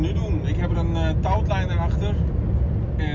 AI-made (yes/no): no